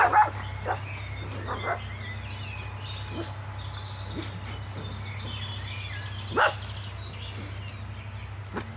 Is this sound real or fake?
real